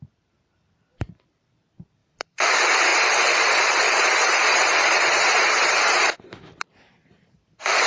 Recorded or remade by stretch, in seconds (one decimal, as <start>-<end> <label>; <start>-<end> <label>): 0.0-2.0 recorded; 2.0-2.5 remade; 2.5-2.9 recorded; 2.9-7.9 remade